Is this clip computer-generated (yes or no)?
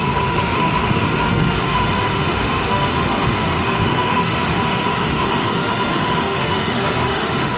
yes